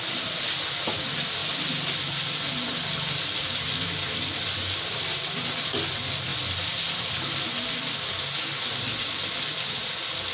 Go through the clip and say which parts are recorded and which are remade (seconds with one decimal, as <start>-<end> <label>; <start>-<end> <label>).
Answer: 0.0-1.4 recorded; 1.4-4.6 remade; 4.6-10.3 recorded